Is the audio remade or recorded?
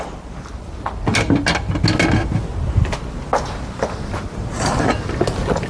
recorded